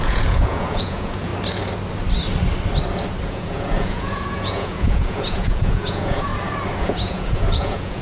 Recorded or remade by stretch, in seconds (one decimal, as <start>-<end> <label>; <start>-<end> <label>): 0.0-1.3 remade; 1.3-3.3 recorded; 3.3-6.3 remade; 6.3-6.8 recorded; 6.8-8.0 remade